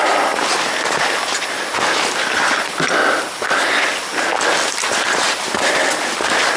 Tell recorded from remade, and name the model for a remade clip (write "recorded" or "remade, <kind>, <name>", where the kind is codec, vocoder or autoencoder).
recorded